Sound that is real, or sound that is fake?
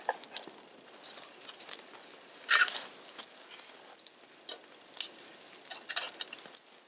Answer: real